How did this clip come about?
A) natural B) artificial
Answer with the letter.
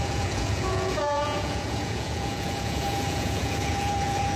B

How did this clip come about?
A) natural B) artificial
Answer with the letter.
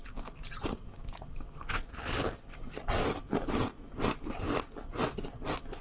A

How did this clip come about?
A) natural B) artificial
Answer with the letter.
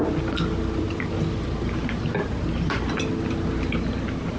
A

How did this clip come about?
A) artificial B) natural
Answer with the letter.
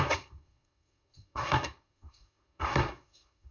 A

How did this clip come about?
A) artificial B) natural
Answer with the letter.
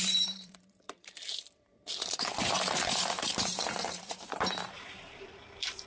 A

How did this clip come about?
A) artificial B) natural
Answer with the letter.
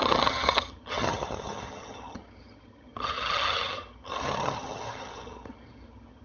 A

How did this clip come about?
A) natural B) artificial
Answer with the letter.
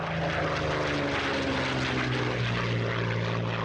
A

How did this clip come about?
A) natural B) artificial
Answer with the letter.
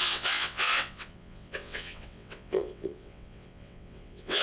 B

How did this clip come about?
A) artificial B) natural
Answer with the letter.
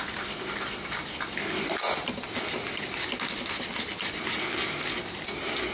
B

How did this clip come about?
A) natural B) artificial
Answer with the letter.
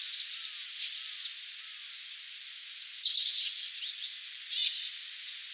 A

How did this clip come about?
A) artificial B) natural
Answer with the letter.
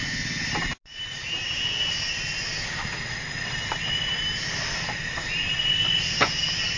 B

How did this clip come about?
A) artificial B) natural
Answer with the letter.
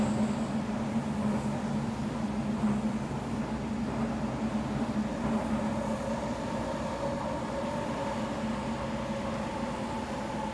B